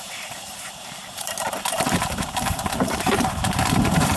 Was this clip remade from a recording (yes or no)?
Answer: yes